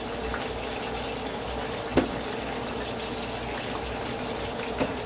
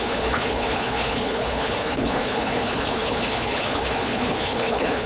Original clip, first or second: first